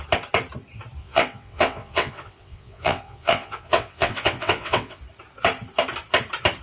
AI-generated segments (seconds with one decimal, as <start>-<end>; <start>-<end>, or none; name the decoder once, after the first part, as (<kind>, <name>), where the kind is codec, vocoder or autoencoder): 1.0-5.0 (vocoder, WaveNeXt)